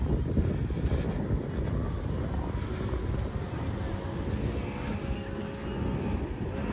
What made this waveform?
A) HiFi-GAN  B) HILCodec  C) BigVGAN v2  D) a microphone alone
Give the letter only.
D